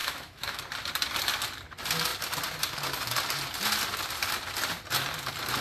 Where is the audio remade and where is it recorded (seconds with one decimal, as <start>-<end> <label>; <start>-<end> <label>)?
0.0-0.6 remade; 0.6-5.6 recorded